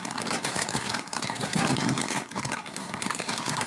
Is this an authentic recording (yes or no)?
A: no